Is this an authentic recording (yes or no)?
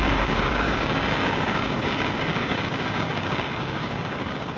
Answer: no